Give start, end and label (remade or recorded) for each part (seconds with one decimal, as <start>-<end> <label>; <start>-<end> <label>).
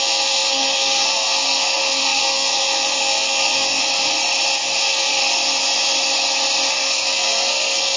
0.0-3.8 remade; 3.8-4.8 recorded; 4.8-5.2 remade; 5.2-6.7 recorded; 6.7-8.0 remade